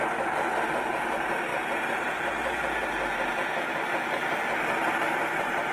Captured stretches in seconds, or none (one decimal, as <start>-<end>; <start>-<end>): 1.5-4.9